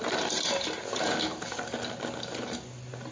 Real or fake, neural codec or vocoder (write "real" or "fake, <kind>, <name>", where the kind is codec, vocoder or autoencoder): real